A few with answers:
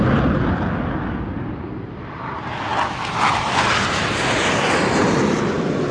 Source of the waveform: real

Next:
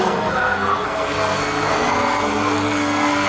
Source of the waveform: fake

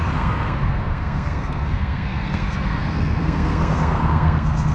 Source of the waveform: fake